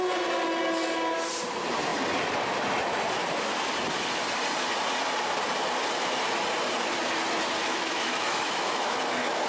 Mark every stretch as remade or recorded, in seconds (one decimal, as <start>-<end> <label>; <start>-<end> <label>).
0.0-7.7 recorded; 7.7-9.5 remade

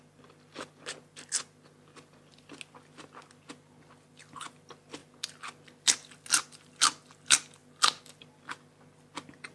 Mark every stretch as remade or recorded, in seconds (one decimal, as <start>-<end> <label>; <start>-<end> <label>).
0.0-9.5 recorded

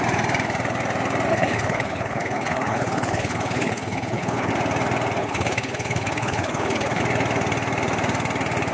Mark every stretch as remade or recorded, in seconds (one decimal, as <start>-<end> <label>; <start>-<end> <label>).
0.0-1.3 recorded; 1.3-4.5 remade; 4.5-5.2 recorded; 5.2-7.0 remade; 7.0-8.7 recorded

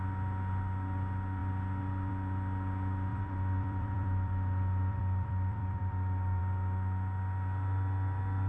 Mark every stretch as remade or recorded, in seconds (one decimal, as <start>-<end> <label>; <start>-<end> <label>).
0.0-3.1 recorded; 3.1-6.4 remade; 6.4-8.5 recorded

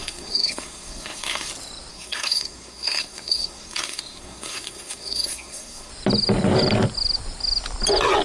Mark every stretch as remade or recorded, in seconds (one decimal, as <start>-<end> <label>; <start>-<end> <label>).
0.0-1.5 remade; 1.5-1.9 recorded; 1.9-5.9 remade; 5.9-8.2 recorded

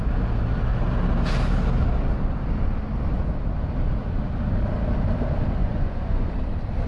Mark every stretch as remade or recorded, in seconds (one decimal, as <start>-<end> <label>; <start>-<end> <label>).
0.0-5.6 recorded; 5.6-6.3 remade; 6.3-6.9 recorded